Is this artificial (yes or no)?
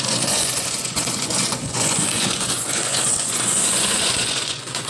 yes